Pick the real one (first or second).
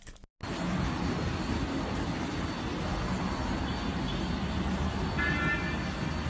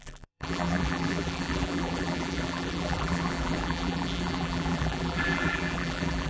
first